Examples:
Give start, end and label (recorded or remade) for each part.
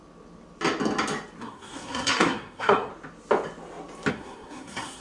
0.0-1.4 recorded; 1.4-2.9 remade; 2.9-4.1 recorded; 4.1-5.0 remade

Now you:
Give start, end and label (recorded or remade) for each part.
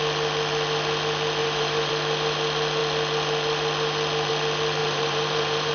0.0-1.4 recorded; 1.4-1.9 remade; 1.9-4.8 recorded; 4.8-5.7 remade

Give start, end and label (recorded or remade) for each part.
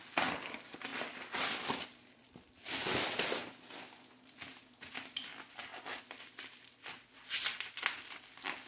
0.0-0.9 recorded; 0.9-2.6 remade; 2.6-5.7 recorded; 5.7-7.1 remade; 7.1-8.7 recorded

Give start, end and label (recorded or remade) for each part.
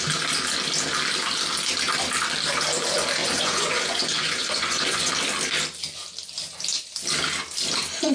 0.0-3.2 recorded; 3.2-5.1 remade; 5.1-8.1 recorded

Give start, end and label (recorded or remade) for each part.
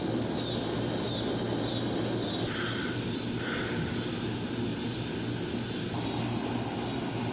0.0-7.3 recorded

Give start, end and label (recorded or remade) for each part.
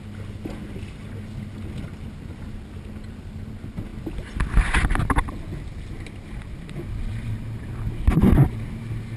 0.0-7.1 recorded; 7.1-8.5 remade; 8.5-9.2 recorded